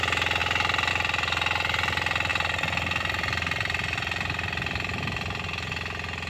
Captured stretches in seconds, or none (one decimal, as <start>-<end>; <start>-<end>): 0.0-6.3